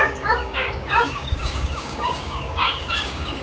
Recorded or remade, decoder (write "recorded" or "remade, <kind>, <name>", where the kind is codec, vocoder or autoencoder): remade, codec, DAC